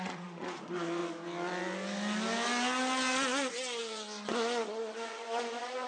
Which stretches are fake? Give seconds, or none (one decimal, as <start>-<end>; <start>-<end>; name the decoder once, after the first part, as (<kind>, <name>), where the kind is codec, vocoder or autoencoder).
0.0-1.0 (vocoder, Vocos); 3.8-5.9